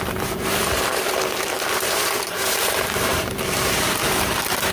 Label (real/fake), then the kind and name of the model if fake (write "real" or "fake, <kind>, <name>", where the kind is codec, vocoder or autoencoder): fake, vocoder, BigVGAN v2